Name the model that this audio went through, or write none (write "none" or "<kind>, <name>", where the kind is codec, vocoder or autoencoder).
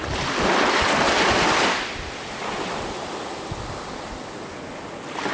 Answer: none